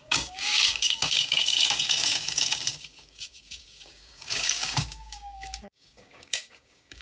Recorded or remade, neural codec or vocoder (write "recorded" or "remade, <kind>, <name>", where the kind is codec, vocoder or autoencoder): remade, codec, DAC